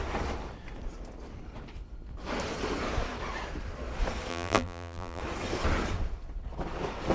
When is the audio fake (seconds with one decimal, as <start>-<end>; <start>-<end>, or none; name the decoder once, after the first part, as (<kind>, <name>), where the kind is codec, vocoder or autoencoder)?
4.3-5.2 (vocoder, BigVGAN v2)